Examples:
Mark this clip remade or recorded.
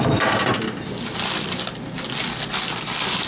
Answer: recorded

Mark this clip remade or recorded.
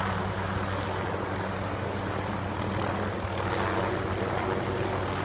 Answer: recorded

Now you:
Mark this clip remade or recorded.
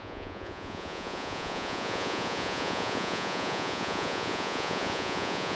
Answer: remade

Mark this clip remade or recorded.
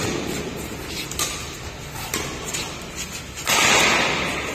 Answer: recorded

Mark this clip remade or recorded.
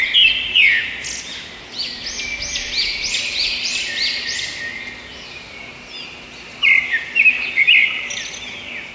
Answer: recorded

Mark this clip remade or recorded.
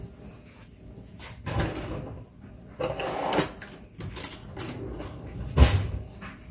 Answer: recorded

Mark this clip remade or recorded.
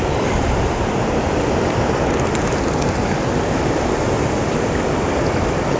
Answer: recorded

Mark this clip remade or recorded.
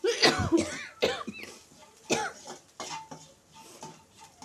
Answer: recorded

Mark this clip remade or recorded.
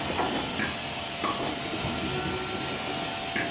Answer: recorded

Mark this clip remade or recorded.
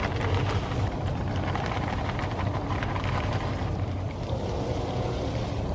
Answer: recorded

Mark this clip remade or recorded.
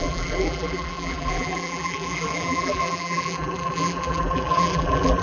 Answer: remade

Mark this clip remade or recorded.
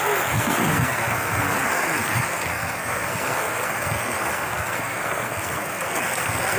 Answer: remade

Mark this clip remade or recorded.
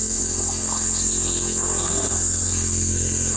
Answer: remade